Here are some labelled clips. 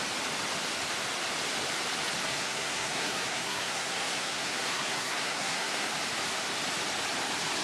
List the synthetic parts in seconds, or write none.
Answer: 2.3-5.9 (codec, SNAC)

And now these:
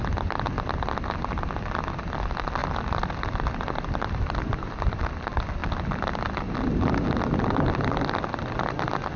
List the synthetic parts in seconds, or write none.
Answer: 2.6-5.0 (vocoder, BigVGAN v2)

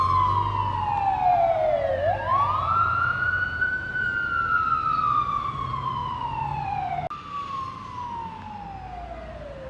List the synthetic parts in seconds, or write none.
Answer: 1.3-1.9 (vocoder, Vocos); 2.3-4.0